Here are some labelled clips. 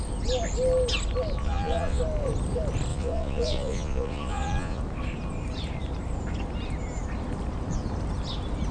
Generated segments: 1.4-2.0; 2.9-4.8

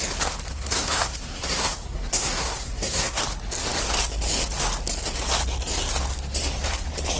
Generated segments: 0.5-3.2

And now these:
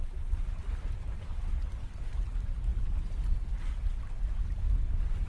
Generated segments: 0.6-1.4

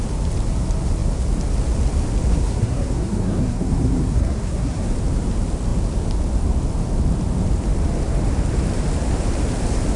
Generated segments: 2.3-4.9

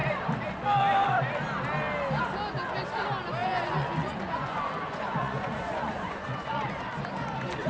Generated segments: 3.4-6.7

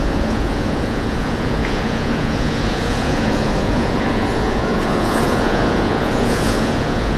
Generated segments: 0.0-7.2

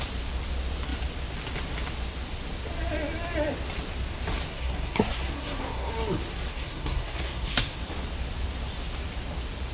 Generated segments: 4.5-5.9; 6.5-7.8

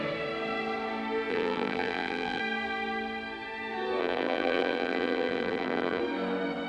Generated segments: 1.3-2.4; 4.0-6.0